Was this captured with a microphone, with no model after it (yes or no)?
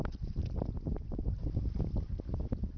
yes